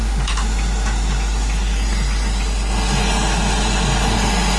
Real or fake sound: real